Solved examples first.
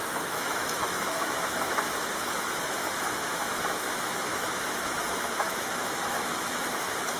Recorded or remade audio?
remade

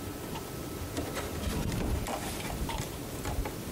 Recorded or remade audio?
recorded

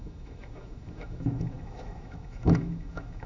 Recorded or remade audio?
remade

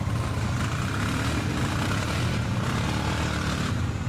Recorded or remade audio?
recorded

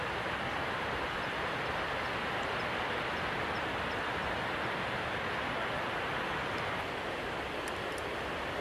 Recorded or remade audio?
recorded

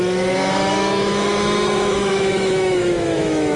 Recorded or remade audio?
remade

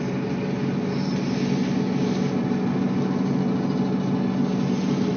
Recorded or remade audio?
recorded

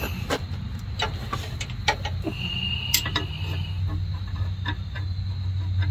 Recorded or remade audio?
recorded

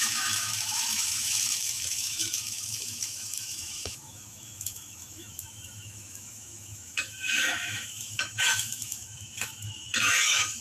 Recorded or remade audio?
remade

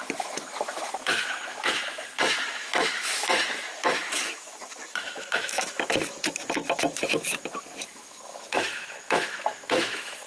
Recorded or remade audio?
remade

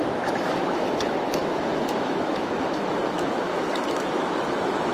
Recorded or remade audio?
remade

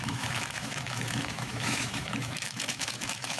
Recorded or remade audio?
remade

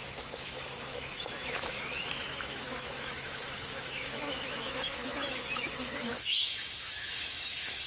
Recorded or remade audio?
remade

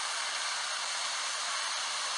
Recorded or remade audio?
recorded